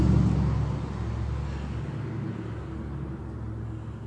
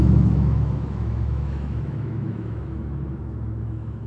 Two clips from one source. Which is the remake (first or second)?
second